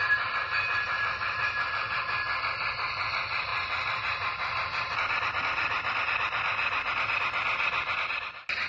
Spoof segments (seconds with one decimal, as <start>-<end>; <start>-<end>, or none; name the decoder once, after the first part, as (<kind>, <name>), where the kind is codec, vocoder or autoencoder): none

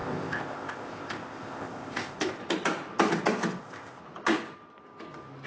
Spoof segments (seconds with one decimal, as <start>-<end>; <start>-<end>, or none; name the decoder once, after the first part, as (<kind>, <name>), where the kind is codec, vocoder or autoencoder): 0.0-2.4 (codec, ZipCodec); 3.6-4.0

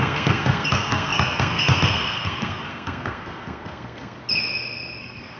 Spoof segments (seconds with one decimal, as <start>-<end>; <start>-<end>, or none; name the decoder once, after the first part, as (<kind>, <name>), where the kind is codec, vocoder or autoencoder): 0.0-4.2 (codec, SNAC); 5.0-5.4

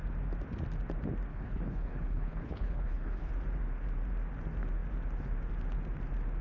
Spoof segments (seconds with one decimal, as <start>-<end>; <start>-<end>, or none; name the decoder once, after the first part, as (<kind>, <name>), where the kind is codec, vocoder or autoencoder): 1.3-3.3 (codec, HILCodec)